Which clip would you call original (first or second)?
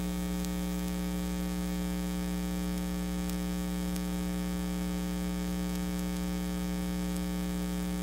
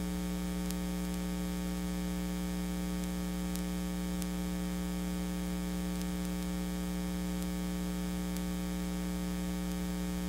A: second